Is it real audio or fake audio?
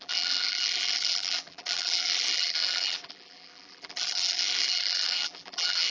fake